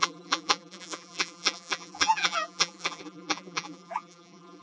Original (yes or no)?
no